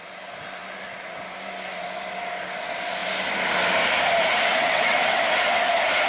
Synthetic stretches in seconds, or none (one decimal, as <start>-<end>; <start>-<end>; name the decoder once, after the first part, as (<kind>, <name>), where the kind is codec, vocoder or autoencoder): 4.5-5.2 (vocoder, WaveNeXt)